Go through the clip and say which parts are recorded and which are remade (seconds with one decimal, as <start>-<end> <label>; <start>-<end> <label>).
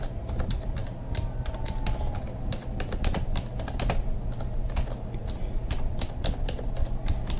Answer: 0.0-0.8 recorded; 0.8-1.6 remade; 1.6-7.4 recorded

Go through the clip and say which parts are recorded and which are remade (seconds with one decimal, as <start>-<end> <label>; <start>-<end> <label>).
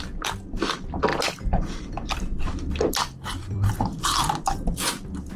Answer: 0.0-1.1 recorded; 1.1-4.3 remade; 4.3-5.4 recorded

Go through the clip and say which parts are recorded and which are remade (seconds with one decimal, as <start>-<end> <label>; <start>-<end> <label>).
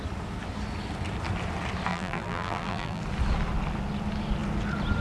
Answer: 0.0-1.9 recorded; 1.9-3.0 remade; 3.0-5.0 recorded